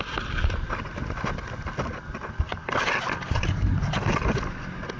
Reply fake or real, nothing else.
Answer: real